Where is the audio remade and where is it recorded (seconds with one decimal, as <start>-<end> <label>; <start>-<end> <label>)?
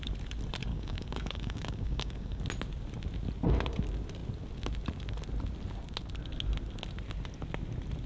0.0-0.7 recorded; 0.7-2.4 remade; 2.4-8.1 recorded